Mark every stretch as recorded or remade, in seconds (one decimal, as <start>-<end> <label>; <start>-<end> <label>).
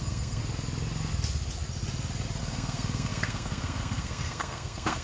0.0-0.4 remade; 0.4-2.4 recorded; 2.4-5.0 remade